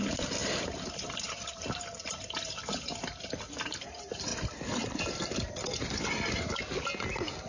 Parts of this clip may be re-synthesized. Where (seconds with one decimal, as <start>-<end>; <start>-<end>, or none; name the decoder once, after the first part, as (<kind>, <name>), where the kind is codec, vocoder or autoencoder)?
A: 0.4-1.9 (vocoder, BigVGAN v2)